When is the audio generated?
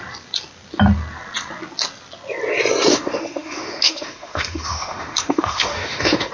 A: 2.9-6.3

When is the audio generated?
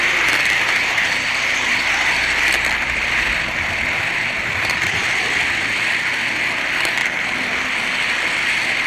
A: 4.5-5.1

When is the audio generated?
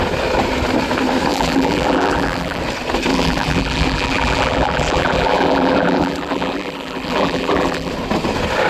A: 1.3-2.6; 3.1-7.9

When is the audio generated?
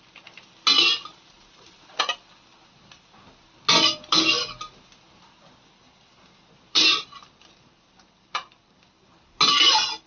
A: 1.1-2.0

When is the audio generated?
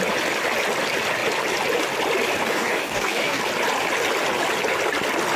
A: 2.4-3.4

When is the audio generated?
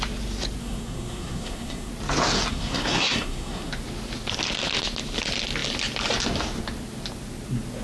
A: 0.6-1.9; 2.5-3.7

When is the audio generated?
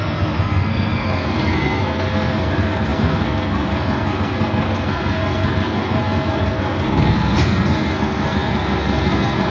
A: 0.0-9.5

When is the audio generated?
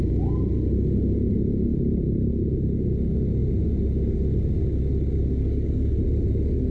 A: 5.4-6.0